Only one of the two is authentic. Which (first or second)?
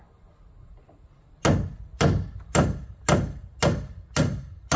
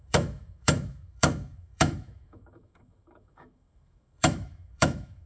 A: first